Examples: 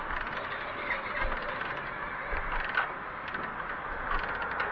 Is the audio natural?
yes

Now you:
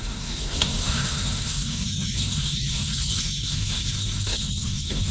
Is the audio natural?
no